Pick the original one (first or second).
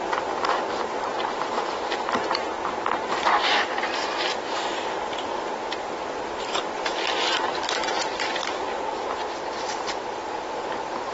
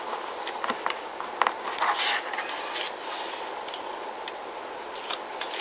second